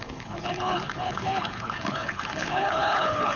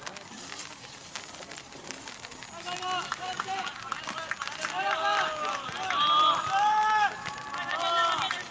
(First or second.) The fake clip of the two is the first